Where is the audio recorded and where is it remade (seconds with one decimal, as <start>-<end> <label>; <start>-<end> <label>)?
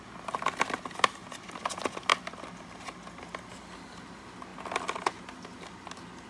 0.0-6.3 recorded